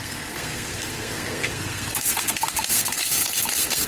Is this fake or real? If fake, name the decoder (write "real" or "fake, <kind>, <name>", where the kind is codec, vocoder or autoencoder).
fake, codec, SNAC